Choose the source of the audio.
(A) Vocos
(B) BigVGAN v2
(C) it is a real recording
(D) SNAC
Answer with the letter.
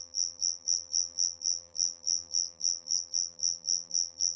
B